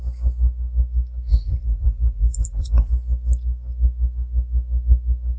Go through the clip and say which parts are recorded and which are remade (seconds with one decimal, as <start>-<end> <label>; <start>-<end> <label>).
0.0-1.3 recorded; 1.3-2.9 remade; 2.9-5.4 recorded